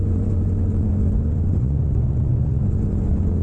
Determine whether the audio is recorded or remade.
remade